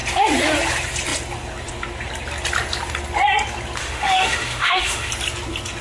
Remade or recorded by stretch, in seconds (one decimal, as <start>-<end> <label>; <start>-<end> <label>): 0.0-3.8 recorded; 3.8-5.1 remade; 5.1-5.8 recorded